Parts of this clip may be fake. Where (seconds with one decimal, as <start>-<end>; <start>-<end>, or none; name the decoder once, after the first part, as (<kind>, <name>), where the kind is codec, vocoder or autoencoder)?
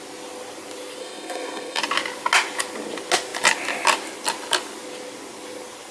1.0-1.8 (codec, SNAC)